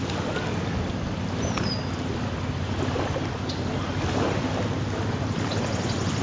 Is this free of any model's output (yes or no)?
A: yes